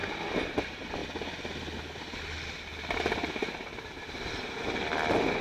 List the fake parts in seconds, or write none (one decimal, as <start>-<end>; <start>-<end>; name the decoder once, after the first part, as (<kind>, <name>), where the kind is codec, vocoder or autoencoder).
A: none

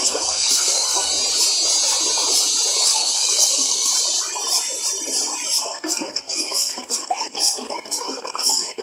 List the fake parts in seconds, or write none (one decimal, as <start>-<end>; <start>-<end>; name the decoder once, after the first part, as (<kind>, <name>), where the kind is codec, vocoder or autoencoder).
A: 0.0-1.1 (codec, SNAC); 2.8-3.9; 5.6-8.8